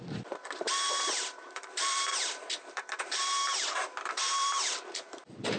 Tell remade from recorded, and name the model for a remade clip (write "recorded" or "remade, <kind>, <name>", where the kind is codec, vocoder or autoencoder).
remade, vocoder, BigVGAN v2